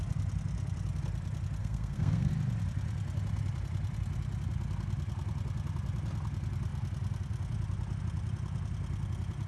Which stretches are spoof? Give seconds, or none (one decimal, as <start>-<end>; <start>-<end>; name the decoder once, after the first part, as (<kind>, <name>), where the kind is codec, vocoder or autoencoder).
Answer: 1.6-2.3 (codec, SNAC)